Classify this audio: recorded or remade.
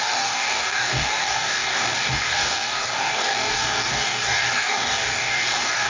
remade